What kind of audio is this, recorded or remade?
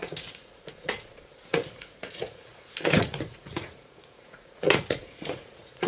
remade